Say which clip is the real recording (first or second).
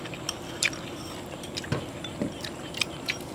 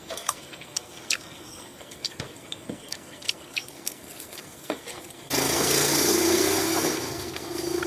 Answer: first